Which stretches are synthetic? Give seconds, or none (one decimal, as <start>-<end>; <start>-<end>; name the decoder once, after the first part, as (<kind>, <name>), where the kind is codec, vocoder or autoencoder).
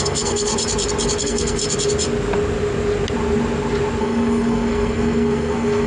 0.0-0.5 (codec, SNAC); 1.2-1.6; 4.0-5.9